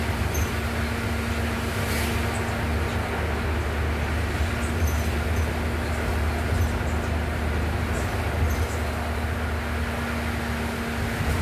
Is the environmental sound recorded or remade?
recorded